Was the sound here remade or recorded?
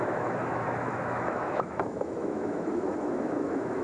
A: remade